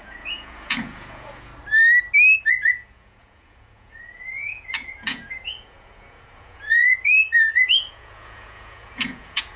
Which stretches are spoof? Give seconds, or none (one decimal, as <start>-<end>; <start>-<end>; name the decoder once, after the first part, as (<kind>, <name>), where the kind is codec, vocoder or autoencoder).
0.0-1.5 (vocoder, Vocos); 2.5-9.6